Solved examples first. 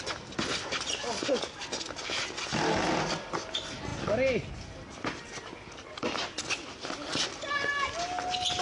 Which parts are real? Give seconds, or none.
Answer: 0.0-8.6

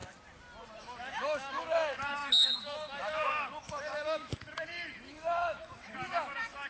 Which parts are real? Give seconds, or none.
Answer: 0.0-0.8

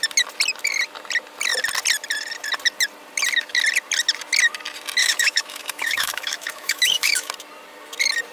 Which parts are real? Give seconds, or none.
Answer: 0.0-5.0; 7.3-8.3

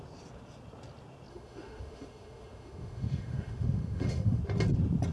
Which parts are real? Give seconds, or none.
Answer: 0.0-1.3; 4.4-5.1

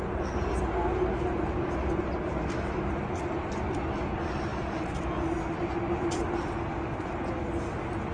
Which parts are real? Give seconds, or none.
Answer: 0.0-8.1

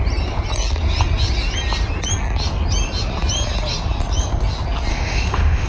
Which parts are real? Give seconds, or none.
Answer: 0.0-4.9